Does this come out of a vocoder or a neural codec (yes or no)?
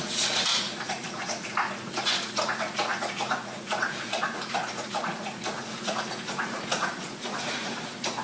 yes